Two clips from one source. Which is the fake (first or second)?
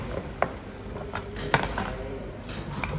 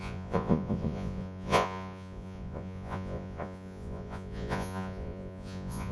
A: second